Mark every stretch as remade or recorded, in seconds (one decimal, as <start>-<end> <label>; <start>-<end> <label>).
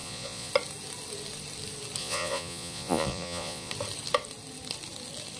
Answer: 0.0-0.5 remade; 0.5-2.0 recorded; 2.0-3.7 remade; 3.7-5.4 recorded